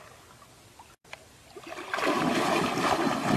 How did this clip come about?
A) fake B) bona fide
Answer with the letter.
B